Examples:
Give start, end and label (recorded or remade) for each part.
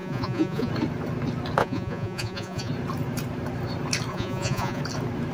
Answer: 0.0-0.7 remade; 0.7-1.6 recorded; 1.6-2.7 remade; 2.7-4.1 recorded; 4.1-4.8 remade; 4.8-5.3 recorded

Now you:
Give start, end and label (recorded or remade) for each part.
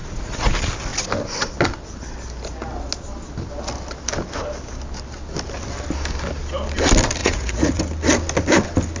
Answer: 0.0-0.5 remade; 0.5-7.2 recorded; 7.2-7.8 remade; 7.8-9.0 recorded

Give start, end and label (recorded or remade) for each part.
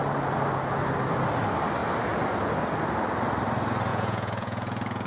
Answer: 0.0-3.9 recorded; 3.9-5.1 remade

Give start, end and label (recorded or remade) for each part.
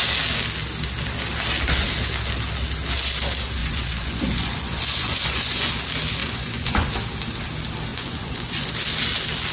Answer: 0.0-3.6 recorded; 3.6-5.7 remade; 5.7-6.2 recorded; 6.2-6.9 remade; 6.9-7.9 recorded; 7.9-8.7 remade; 8.7-9.5 recorded